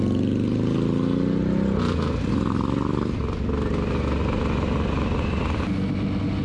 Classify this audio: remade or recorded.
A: recorded